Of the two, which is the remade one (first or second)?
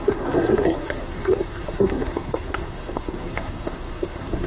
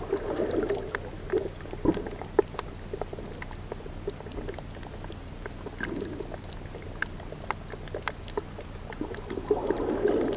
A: first